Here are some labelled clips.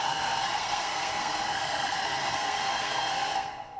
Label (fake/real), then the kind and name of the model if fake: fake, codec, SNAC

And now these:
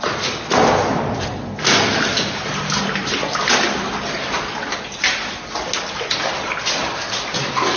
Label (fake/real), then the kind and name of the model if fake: real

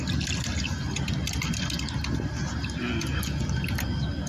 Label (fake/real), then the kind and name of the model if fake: real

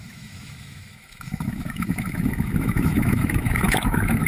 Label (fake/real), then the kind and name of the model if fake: fake, autoencoder, DAC-VAE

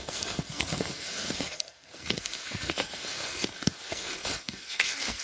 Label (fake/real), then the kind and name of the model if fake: fake, codec, SNAC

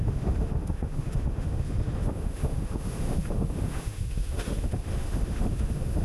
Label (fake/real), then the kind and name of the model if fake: fake, autoencoder, DAC-VAE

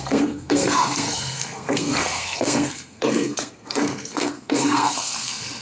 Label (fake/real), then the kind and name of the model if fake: fake, codec, SNAC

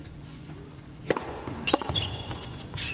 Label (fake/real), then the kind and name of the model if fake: fake, vocoder, Vocos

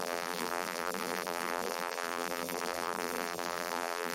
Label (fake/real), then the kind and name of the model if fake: fake, vocoder, BigVGAN v2